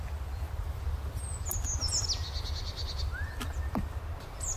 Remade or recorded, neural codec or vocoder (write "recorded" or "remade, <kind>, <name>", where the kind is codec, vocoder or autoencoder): recorded